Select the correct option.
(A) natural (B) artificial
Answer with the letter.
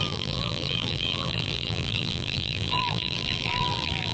B